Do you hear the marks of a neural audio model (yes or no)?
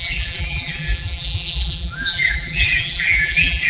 yes